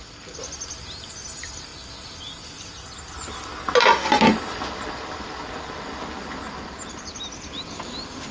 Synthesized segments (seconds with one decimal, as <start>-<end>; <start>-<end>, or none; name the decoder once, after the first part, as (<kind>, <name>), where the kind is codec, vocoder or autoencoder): none